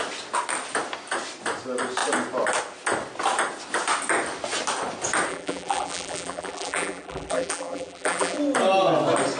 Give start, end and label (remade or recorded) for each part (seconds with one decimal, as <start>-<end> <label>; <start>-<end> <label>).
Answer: 0.0-5.3 recorded; 5.3-8.4 remade; 8.4-9.4 recorded